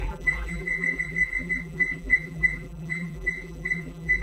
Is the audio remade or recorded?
remade